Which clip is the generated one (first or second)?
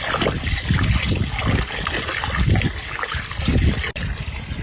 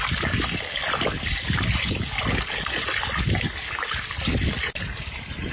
first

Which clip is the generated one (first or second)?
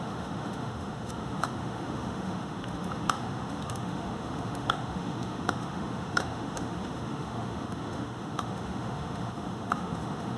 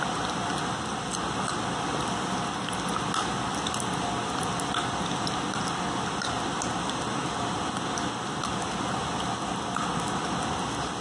first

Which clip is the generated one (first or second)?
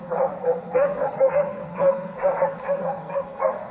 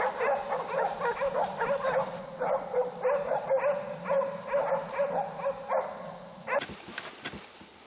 first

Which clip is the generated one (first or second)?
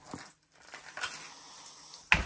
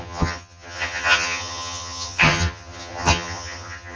second